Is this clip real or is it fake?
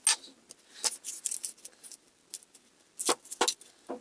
real